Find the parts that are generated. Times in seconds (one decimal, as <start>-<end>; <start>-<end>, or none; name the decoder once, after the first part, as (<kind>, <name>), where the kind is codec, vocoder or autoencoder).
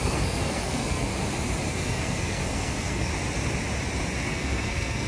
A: 0.0-1.1 (codec, SNAC); 1.7-3.1; 4.3-5.1